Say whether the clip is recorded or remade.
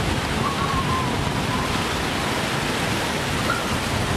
recorded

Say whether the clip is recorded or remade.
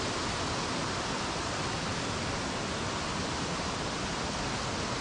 recorded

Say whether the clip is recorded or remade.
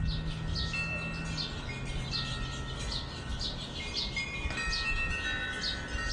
recorded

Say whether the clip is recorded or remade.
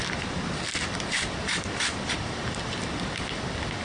recorded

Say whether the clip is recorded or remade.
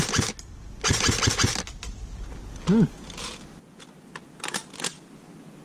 recorded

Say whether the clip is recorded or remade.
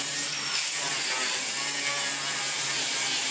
remade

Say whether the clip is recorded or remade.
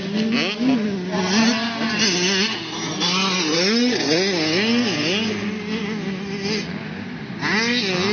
recorded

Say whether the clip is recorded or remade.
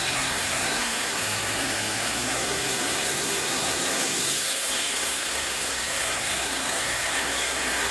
remade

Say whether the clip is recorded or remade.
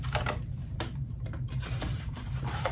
remade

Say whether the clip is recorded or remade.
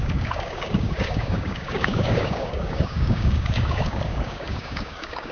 remade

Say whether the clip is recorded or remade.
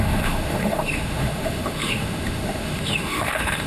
remade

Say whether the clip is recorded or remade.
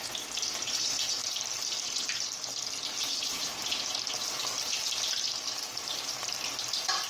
recorded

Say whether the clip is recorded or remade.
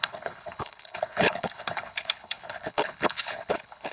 remade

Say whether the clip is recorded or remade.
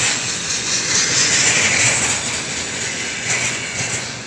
remade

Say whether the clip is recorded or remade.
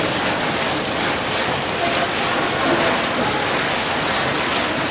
recorded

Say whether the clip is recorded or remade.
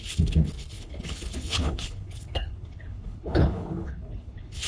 remade